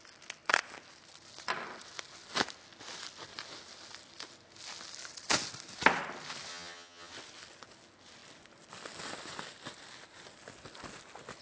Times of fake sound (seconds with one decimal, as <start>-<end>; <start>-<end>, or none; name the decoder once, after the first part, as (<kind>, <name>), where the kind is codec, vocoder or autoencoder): 6.5-7.1 (vocoder, HiFi-GAN)